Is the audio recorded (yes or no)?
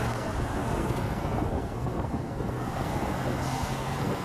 no